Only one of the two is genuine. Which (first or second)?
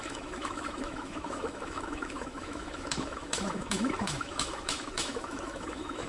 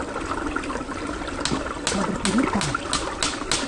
second